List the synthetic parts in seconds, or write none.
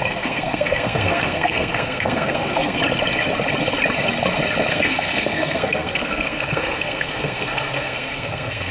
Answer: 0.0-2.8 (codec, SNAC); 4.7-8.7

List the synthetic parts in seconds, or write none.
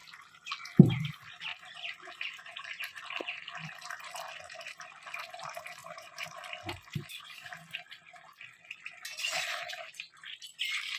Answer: 1.5-3.0 (vocoder, BigVGAN v2); 5.8-6.4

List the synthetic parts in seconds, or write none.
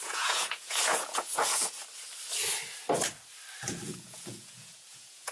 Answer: 0.0-1.8 (vocoder, Vocos); 3.7-5.3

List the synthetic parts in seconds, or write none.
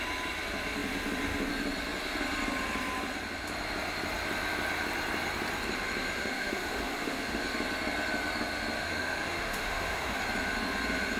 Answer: 6.2-7.4 (autoencoder, DAC-VAE); 8.8-10.2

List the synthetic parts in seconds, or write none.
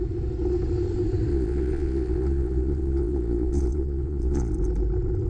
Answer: 1.3-4.5 (vocoder, Vocos)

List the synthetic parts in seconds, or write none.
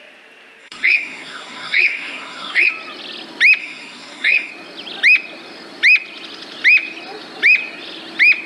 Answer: 0.6-2.7 (codec, SNAC); 3.6-4.5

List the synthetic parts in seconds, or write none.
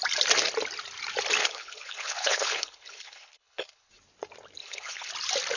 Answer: 1.4-3.9 (codec, HILCodec); 4.6-5.1